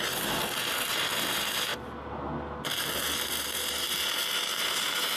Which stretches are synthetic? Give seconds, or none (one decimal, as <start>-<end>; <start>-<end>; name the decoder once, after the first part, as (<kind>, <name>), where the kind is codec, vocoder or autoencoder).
none